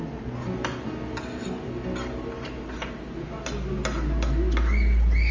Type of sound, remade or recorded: recorded